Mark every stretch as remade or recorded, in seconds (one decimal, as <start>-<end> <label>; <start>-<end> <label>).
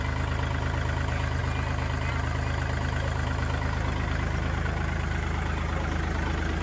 0.0-6.6 recorded